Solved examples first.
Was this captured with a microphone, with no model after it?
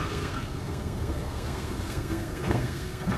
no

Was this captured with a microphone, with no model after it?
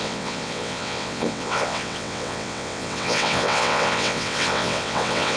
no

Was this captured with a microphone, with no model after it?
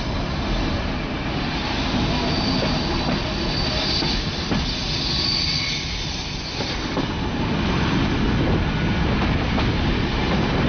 yes